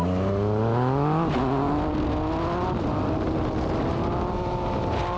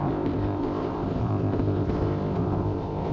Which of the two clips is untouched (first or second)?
first